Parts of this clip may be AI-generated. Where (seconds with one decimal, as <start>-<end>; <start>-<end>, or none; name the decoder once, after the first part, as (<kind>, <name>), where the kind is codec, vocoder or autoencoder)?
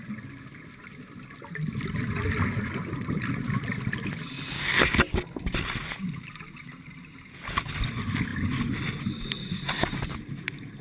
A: none